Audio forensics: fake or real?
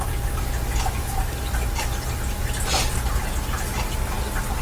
real